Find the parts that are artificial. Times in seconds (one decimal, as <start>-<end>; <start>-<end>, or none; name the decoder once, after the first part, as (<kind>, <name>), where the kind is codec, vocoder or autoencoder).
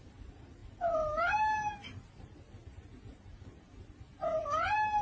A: none